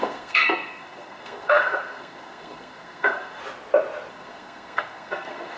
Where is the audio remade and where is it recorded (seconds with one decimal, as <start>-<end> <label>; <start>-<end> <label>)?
0.0-3.4 remade; 3.4-4.1 recorded; 4.1-5.6 remade